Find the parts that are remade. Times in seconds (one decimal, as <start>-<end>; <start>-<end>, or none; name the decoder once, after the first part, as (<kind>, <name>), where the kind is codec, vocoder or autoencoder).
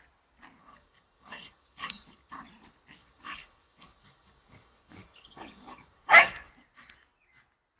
0.6-2.4 (codec, DAC); 3.0-6.5